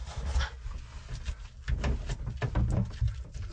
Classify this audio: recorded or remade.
recorded